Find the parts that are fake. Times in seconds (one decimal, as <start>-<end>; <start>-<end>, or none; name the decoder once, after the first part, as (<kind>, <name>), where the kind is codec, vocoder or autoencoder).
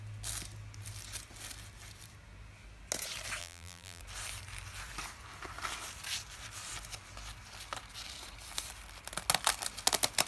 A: 3.4-4.0 (vocoder, BigVGAN v2)